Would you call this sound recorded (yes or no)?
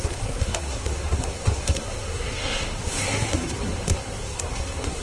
no